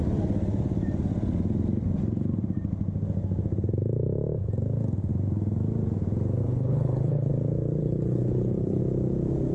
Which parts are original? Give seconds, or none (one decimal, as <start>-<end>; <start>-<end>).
0.0-6.4; 7.3-7.8; 8.8-9.5